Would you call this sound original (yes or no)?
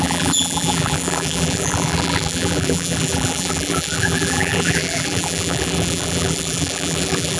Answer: no